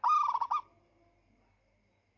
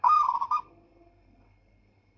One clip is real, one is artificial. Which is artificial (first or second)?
second